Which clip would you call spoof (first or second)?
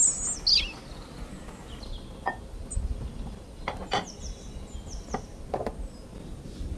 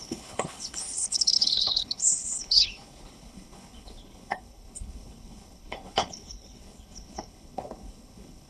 second